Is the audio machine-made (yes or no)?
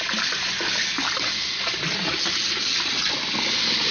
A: no